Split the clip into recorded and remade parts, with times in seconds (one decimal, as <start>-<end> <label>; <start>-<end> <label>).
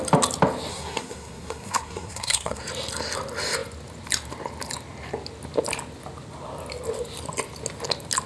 0.0-0.7 recorded; 0.7-2.6 remade; 2.6-8.3 recorded